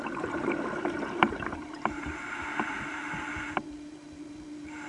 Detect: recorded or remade remade